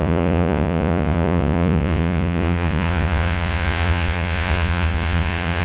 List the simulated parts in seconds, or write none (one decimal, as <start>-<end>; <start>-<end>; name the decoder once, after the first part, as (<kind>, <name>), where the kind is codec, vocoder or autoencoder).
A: 0.0-5.6 (vocoder, Vocos)